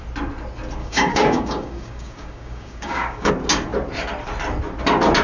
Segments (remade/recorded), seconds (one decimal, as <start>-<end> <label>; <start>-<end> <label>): 0.0-0.8 recorded; 0.8-3.3 remade; 3.3-5.2 recorded